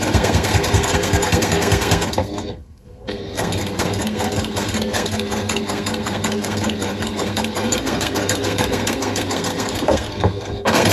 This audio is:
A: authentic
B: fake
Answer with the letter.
B